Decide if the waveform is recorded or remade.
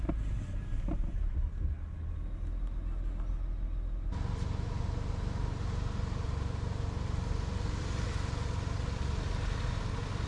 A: recorded